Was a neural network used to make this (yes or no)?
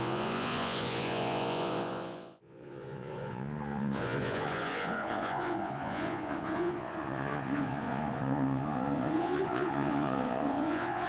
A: yes